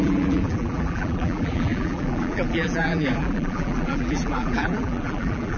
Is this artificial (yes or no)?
yes